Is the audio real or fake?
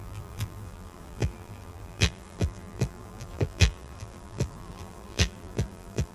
fake